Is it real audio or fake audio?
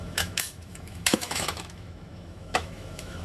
fake